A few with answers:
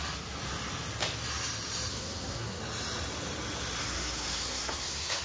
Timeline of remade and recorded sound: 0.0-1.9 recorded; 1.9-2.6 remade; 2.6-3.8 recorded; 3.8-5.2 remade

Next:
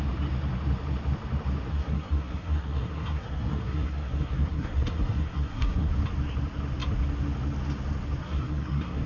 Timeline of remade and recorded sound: 0.0-1.7 recorded; 1.7-5.9 remade; 5.9-8.2 recorded; 8.2-9.1 remade

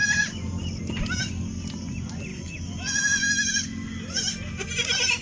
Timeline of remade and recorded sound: 0.0-2.3 recorded; 2.3-3.5 remade; 3.5-5.2 recorded

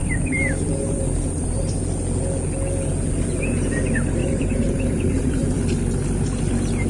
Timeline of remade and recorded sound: 0.0-1.8 remade; 1.8-4.2 recorded; 4.2-5.6 remade; 5.6-6.9 recorded

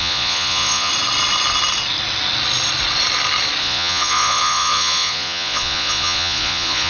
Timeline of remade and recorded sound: 0.0-0.9 remade; 0.9-3.6 recorded; 3.6-6.9 remade

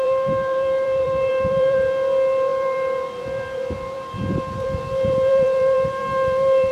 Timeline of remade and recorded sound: 0.0-6.7 remade

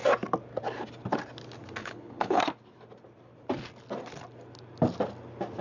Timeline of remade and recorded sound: 0.0-1.8 recorded; 1.8-2.4 remade; 2.4-5.6 recorded